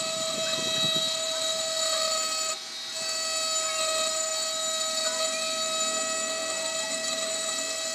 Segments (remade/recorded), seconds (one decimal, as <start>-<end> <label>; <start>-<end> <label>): 0.0-7.9 recorded